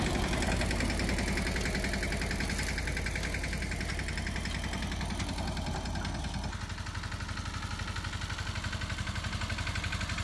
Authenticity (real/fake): real